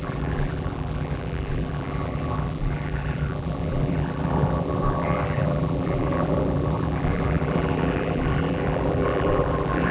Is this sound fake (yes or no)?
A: yes